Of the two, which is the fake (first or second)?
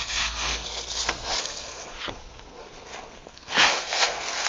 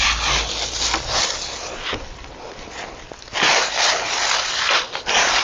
first